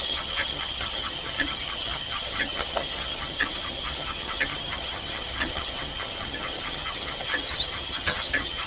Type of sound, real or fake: fake